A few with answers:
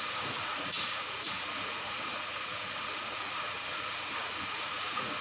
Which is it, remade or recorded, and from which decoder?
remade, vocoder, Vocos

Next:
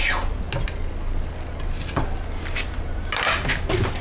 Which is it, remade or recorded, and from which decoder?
recorded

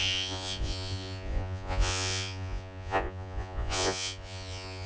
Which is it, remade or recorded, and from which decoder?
remade, vocoder, Vocos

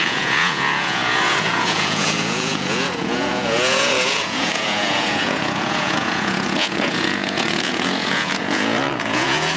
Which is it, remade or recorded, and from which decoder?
remade, vocoder, Vocos